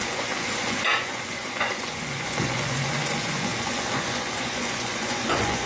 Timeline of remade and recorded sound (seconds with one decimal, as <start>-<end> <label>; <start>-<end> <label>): 0.0-5.7 remade